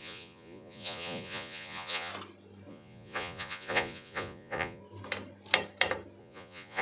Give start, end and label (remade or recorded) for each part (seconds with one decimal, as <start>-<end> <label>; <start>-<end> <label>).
0.0-2.1 remade; 2.1-2.7 recorded; 2.7-4.8 remade; 4.8-6.2 recorded; 6.2-6.8 remade